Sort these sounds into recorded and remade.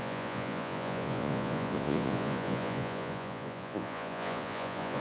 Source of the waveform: remade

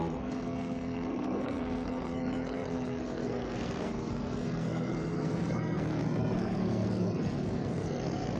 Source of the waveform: remade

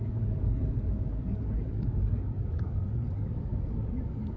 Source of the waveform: remade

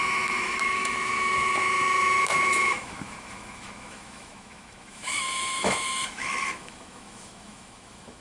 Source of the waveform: remade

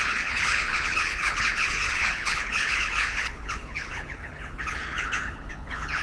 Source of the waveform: remade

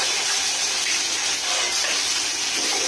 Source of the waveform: remade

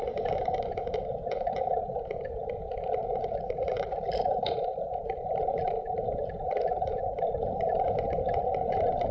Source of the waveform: remade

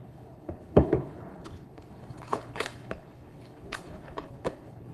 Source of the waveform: remade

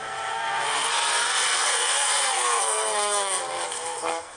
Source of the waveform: remade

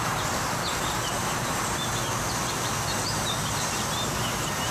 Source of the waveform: recorded